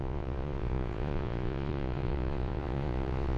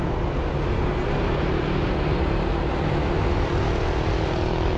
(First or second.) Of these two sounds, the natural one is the second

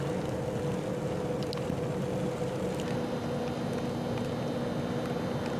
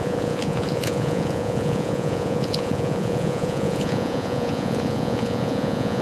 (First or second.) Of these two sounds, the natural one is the first